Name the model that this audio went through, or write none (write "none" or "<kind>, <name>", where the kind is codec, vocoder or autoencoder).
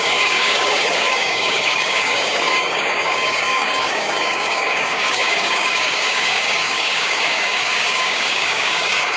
codec, DAC